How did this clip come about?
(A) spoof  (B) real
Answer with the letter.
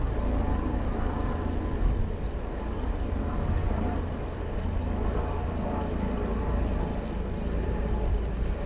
B